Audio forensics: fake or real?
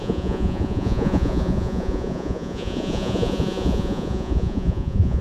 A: fake